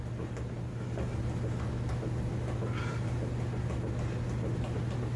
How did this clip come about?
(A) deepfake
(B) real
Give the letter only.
B